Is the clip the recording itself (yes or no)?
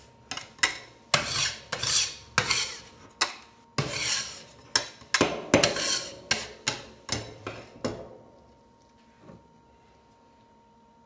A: yes